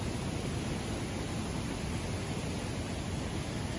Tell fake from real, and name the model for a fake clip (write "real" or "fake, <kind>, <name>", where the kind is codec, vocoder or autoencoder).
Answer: real